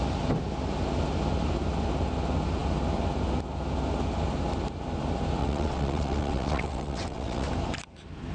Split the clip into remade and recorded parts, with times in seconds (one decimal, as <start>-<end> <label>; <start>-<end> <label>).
0.0-5.4 recorded; 5.4-7.5 remade; 7.5-8.3 recorded